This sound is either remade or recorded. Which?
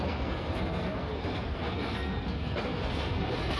remade